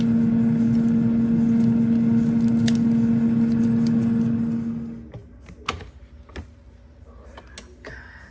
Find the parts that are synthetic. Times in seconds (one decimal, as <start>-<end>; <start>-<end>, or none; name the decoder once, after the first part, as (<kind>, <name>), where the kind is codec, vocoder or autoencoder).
none